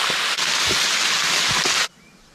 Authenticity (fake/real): real